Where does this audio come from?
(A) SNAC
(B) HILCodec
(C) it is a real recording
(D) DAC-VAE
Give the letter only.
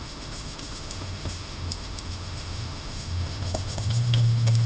D